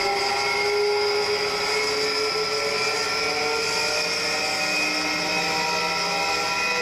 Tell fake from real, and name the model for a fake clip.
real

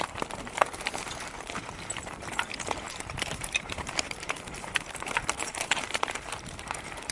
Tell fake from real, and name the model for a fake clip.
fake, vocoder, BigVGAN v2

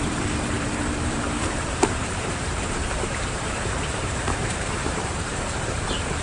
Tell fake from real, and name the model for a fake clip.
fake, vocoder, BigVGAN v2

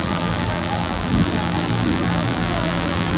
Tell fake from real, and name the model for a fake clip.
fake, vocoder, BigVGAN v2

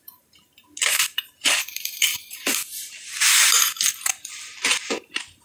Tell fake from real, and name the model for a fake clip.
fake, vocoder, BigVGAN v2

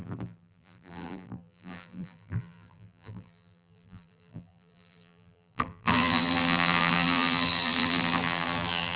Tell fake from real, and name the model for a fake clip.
fake, vocoder, BigVGAN v2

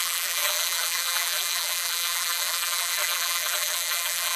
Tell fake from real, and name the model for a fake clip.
fake, vocoder, BigVGAN v2